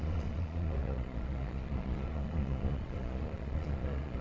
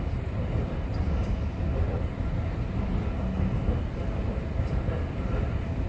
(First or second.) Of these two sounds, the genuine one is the second